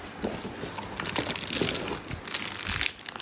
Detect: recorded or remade recorded